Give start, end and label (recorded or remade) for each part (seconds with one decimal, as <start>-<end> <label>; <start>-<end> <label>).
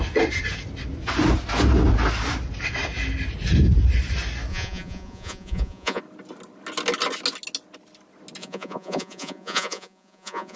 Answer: 0.0-4.5 recorded; 4.5-6.0 remade; 6.0-8.4 recorded; 8.4-10.6 remade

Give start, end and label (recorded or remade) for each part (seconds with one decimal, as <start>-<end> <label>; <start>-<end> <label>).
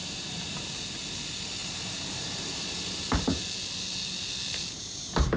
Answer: 0.0-0.7 remade; 0.7-1.6 recorded; 1.6-3.4 remade; 3.4-5.4 recorded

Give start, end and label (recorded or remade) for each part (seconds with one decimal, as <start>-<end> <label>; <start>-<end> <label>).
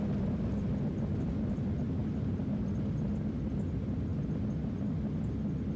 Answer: 0.0-2.0 recorded; 2.0-2.5 remade; 2.5-5.8 recorded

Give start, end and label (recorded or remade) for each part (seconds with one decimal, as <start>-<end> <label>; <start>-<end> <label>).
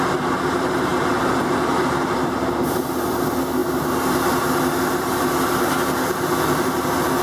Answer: 0.0-0.9 recorded; 0.9-2.9 remade; 2.9-7.2 recorded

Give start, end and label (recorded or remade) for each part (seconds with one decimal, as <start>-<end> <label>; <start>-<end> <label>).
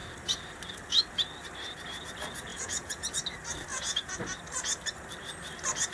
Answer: 0.0-2.5 recorded; 2.5-3.1 remade; 3.1-3.7 recorded; 3.7-4.2 remade; 4.2-5.9 recorded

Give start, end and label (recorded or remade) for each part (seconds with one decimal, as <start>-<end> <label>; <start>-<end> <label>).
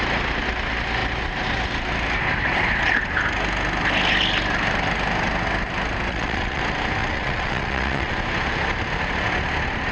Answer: 0.0-6.1 recorded; 6.1-6.6 remade; 6.6-7.0 recorded; 7.0-8.1 remade; 8.1-9.9 recorded